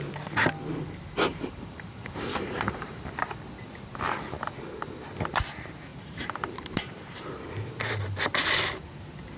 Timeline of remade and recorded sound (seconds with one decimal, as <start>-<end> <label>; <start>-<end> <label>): 0.0-1.3 recorded; 1.3-3.1 remade; 3.1-5.9 recorded; 5.9-7.2 remade; 7.2-9.4 recorded